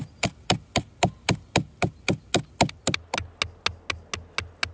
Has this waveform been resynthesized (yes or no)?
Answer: no